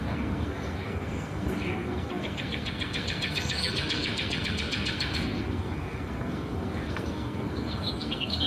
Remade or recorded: remade